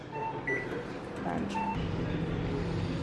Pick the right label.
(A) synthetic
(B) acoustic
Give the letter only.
B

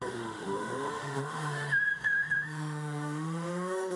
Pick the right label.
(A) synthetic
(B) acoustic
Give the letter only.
A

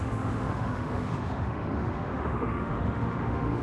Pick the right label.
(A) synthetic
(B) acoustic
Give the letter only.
A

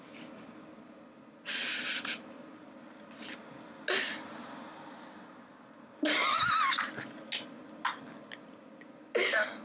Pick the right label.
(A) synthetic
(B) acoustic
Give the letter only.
B